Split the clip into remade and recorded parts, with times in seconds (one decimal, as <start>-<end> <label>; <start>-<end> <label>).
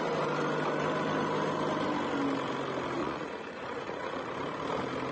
0.0-3.0 recorded; 3.0-4.3 remade; 4.3-5.1 recorded